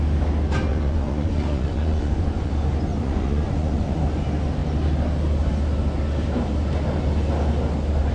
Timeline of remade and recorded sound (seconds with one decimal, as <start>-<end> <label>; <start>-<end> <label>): 0.0-0.7 recorded; 0.7-2.5 remade; 2.5-2.9 recorded; 2.9-4.0 remade; 4.0-8.1 recorded